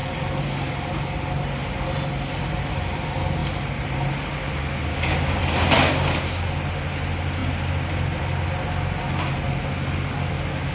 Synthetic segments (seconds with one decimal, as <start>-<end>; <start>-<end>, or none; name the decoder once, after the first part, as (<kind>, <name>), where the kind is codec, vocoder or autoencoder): 4.9-5.4 (codec, DAC)